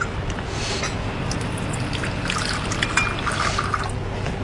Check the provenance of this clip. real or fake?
real